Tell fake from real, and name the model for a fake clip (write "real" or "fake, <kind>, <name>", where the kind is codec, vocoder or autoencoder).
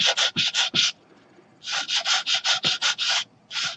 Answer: real